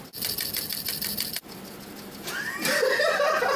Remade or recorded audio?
recorded